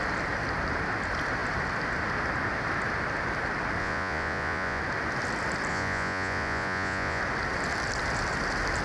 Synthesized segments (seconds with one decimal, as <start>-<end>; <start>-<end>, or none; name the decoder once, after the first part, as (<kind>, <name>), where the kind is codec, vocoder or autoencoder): 3.8-4.8 (vocoder, Vocos); 5.7-7.2